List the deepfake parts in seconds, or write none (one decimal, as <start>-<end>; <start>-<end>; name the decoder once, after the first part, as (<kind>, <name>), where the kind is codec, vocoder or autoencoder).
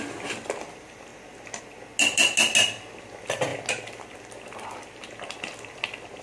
none